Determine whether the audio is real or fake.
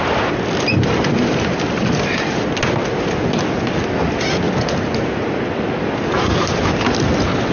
real